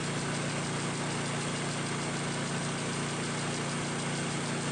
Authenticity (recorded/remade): recorded